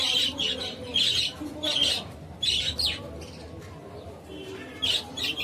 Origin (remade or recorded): recorded